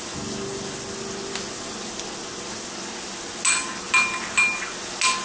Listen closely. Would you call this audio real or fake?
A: real